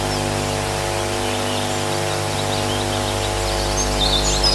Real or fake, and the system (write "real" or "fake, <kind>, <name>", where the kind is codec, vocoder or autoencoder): real